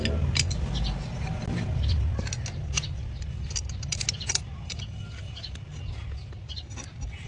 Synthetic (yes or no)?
no